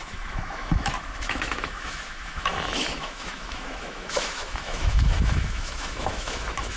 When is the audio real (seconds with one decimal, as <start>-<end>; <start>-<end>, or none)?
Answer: none